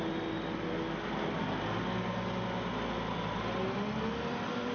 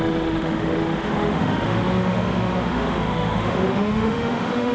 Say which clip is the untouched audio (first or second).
first